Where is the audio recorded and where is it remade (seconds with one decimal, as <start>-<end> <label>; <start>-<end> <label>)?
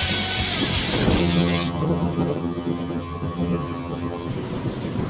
0.0-1.2 recorded; 1.2-4.3 remade; 4.3-5.1 recorded